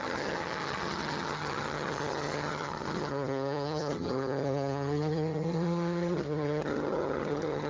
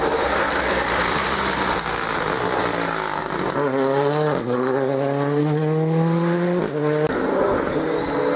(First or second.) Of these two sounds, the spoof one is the first